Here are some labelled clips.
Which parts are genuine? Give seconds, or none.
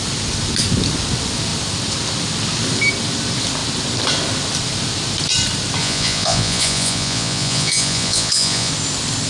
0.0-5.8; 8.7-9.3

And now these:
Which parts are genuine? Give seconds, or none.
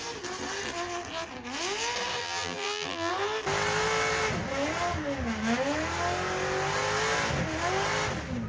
0.0-2.2; 3.1-8.5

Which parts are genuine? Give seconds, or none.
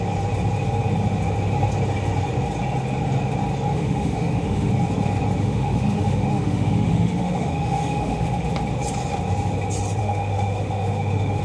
0.0-3.7; 4.7-5.4; 8.5-10.0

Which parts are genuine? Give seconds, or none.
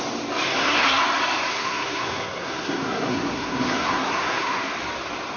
0.0-0.5; 1.0-1.5; 4.7-5.4